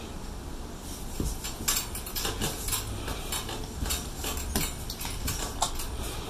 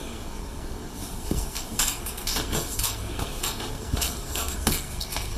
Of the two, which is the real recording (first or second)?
first